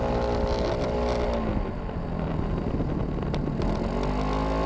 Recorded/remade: recorded